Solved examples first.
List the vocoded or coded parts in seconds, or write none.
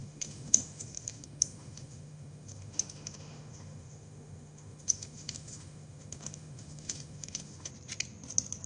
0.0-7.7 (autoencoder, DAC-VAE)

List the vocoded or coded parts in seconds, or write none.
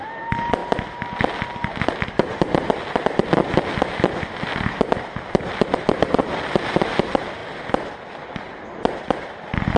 none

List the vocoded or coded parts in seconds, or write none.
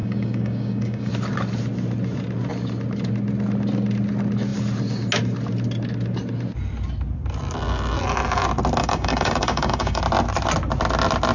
0.0-1.1 (codec, DAC); 8.8-10.0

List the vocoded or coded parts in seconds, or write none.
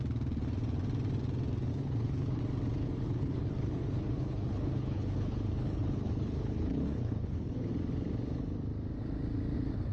1.7-2.4 (codec, HILCodec); 2.8-7.7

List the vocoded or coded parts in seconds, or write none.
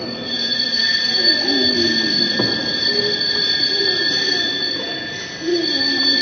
none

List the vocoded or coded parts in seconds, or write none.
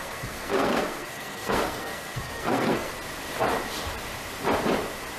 0.0-2.9 (codec, SNAC)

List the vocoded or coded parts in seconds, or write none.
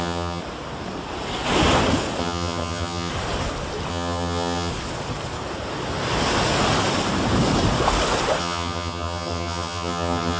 0.0-0.4 (vocoder, HiFi-GAN); 2.2-3.1; 3.9-4.7; 8.4-10.4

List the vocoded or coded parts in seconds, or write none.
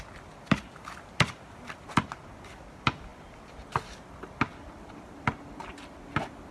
none